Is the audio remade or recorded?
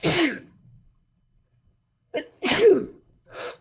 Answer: remade